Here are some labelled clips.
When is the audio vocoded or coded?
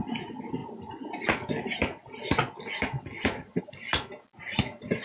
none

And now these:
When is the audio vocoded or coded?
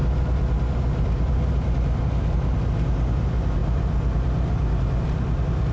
none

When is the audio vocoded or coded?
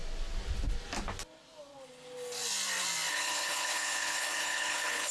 3.1-5.1 (codec, HILCodec)